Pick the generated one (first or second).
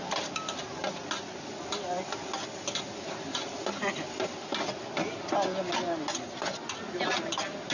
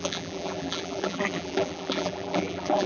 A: second